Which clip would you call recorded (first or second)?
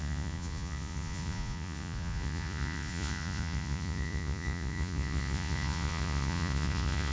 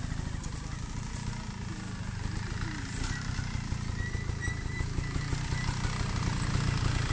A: second